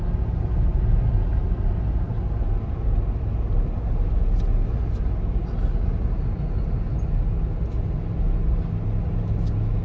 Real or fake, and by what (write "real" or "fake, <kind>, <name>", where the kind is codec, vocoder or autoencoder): real